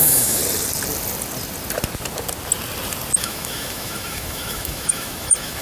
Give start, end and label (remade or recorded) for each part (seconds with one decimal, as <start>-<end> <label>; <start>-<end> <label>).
0.0-0.4 remade; 0.4-3.2 recorded; 3.2-5.6 remade